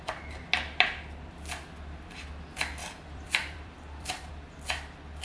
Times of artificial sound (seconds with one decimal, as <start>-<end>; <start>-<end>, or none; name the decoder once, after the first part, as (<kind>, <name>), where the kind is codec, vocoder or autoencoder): 2.8-4.3 (vocoder, BigVGAN v2)